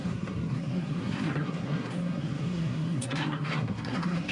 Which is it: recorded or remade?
remade